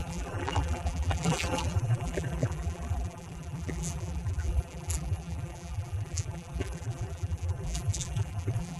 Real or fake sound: fake